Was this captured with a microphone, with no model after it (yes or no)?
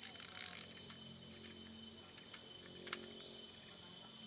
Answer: yes